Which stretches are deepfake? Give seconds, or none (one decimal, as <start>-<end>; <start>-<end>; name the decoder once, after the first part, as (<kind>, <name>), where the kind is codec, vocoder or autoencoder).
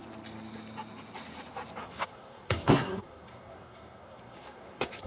1.8-5.1 (codec, SNAC)